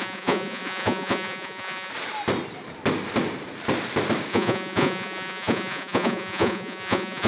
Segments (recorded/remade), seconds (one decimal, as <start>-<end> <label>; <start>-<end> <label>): 0.0-1.9 remade; 1.9-4.3 recorded; 4.3-7.3 remade